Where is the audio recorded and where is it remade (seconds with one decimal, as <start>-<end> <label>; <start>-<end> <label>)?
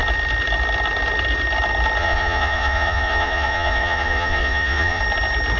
0.0-2.0 recorded; 2.0-5.0 remade; 5.0-5.6 recorded